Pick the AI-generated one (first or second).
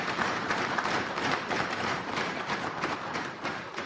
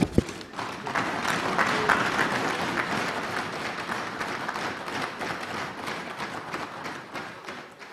first